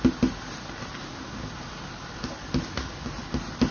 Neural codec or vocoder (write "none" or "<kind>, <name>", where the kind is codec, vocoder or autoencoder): none